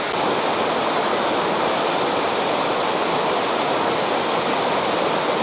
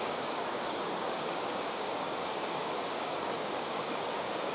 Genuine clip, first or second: first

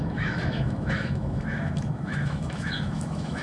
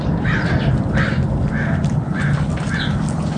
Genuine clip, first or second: second